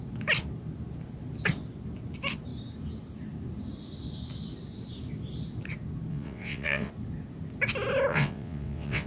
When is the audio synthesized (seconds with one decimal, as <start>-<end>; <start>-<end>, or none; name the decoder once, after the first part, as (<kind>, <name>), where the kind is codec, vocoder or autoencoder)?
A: 6.1-6.9 (vocoder, WaveNeXt); 8.1-9.1